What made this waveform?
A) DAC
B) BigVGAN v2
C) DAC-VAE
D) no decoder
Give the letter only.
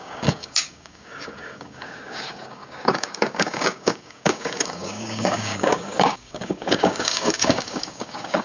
A